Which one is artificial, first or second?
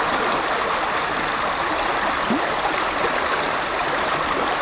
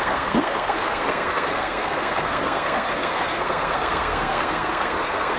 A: second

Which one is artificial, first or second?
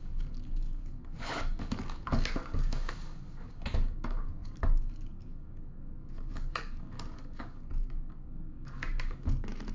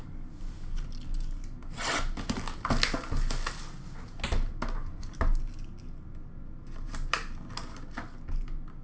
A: first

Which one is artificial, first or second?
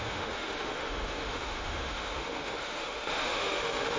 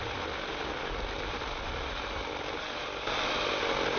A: first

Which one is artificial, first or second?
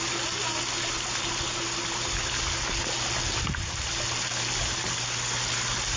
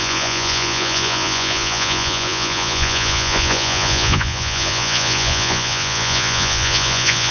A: second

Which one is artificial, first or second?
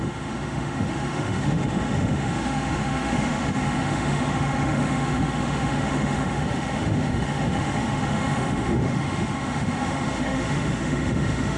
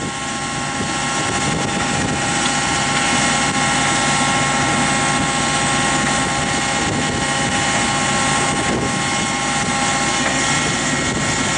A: first